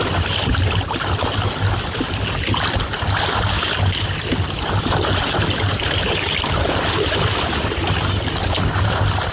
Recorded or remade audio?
recorded